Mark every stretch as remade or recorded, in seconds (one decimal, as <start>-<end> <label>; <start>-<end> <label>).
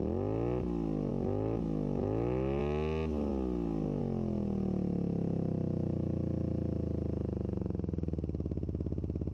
0.0-1.1 recorded; 1.1-2.6 remade; 2.6-9.3 recorded